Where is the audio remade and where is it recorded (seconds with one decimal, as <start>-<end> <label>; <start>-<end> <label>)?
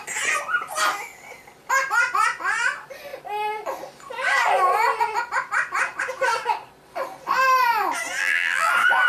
0.0-8.2 recorded; 8.2-8.7 remade; 8.7-9.1 recorded